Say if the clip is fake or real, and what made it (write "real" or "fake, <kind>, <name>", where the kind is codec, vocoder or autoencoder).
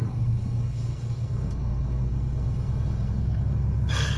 fake, codec, SNAC